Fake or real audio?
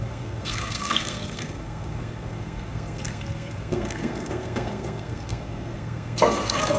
fake